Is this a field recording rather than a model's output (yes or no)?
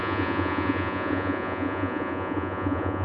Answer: no